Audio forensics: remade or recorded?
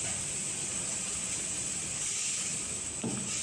recorded